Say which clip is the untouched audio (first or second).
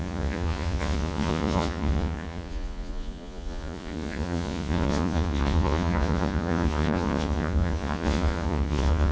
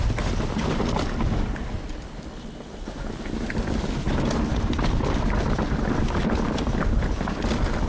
second